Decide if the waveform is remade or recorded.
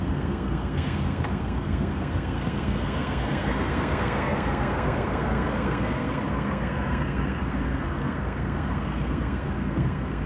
remade